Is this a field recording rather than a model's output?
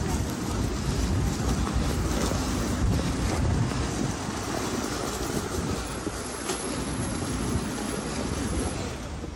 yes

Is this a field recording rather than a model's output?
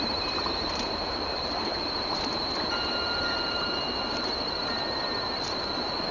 no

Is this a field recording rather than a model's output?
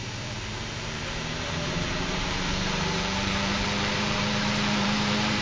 no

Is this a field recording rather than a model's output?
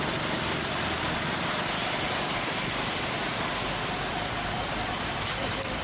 yes